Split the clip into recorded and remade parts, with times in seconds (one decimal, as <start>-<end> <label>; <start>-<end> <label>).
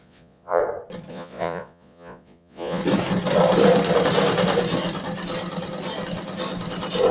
0.0-0.6 remade; 0.6-1.1 recorded; 1.1-2.8 remade; 2.8-7.1 recorded